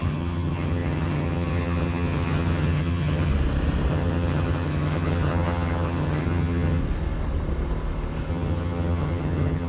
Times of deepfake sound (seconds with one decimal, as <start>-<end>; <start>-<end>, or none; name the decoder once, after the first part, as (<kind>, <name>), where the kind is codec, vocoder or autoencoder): 0.0-3.3 (vocoder, HiFi-GAN); 3.9-6.8; 8.3-9.7